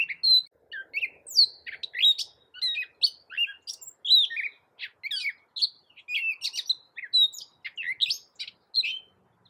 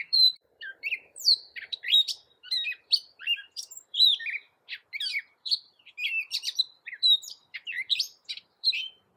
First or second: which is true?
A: first